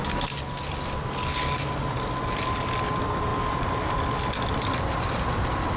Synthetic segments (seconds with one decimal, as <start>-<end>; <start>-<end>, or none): none